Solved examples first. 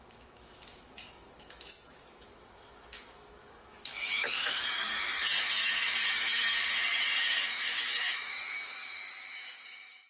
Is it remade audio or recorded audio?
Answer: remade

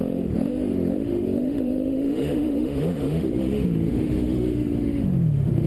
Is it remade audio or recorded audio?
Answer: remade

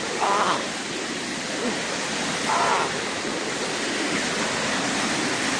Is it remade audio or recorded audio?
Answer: recorded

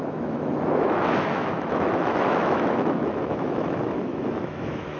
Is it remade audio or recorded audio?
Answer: remade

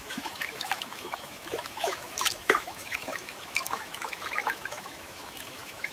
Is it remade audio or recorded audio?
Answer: remade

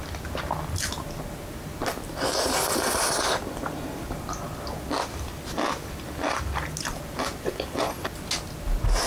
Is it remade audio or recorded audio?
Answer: recorded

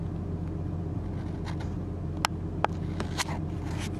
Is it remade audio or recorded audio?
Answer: recorded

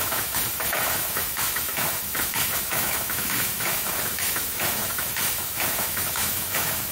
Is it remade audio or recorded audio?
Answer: remade